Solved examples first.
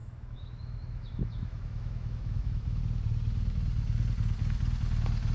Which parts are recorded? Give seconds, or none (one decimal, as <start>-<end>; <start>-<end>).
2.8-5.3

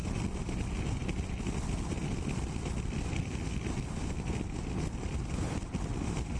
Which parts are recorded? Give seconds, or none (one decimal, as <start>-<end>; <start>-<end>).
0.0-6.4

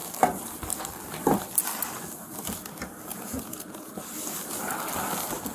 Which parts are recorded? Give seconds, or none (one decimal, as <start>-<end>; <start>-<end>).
0.0-3.1; 3.9-5.5

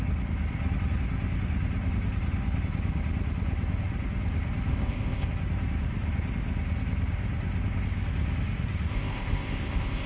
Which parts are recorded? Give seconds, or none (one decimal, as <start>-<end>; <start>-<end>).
0.0-4.7; 5.3-8.9